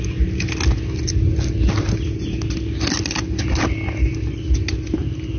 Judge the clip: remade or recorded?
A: recorded